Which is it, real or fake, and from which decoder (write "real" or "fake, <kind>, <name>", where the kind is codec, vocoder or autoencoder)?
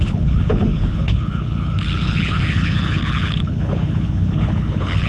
fake, codec, HILCodec